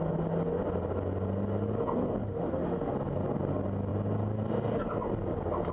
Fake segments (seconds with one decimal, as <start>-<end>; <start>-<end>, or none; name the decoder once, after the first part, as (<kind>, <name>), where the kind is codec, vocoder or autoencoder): 2.2-2.9 (autoencoder, DAC-VAE)